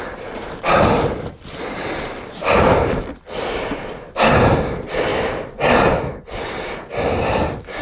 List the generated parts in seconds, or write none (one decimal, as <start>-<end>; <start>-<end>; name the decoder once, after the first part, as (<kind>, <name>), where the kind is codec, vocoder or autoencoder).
none